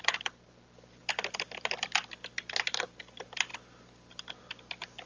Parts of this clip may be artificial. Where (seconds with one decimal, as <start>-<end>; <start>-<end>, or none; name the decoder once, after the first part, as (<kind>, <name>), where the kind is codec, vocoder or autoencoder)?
none